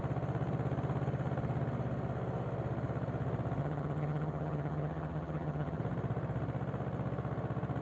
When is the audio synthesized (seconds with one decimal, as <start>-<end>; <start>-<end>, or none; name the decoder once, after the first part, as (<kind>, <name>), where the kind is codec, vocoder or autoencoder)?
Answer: 3.6-5.8 (vocoder, HiFi-GAN)